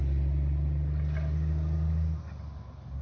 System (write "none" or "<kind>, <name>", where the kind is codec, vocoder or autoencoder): none